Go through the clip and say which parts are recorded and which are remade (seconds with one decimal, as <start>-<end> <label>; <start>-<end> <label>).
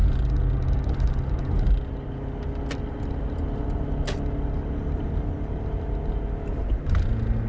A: 0.0-7.5 recorded